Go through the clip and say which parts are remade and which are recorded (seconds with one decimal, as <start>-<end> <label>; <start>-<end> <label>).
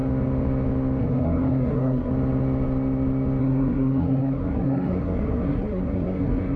0.0-1.0 recorded; 1.0-2.1 remade; 2.1-3.4 recorded; 3.4-6.6 remade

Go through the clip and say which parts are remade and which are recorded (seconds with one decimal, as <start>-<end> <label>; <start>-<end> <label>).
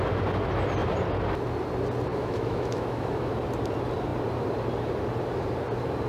0.0-2.1 recorded; 2.1-3.3 remade; 3.3-6.1 recorded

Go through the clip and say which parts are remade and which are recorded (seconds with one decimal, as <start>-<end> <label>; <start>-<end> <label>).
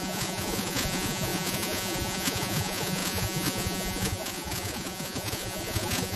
0.0-6.2 remade